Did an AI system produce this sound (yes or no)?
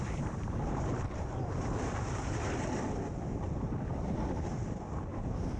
no